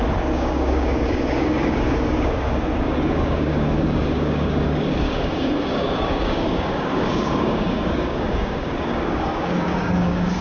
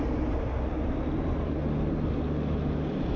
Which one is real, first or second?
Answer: second